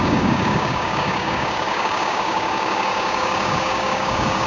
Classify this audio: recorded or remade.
remade